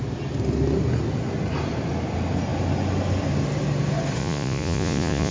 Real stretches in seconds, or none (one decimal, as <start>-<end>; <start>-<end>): 0.0-4.2